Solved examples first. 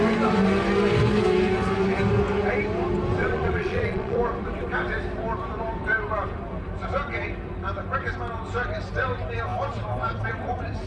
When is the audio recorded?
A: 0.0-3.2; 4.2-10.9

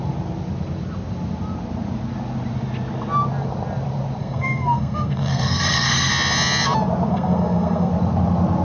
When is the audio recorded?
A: 0.0-4.2; 6.1-7.1; 7.9-8.6